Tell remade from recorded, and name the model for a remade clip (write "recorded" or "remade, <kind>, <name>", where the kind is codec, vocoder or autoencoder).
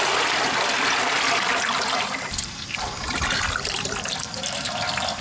recorded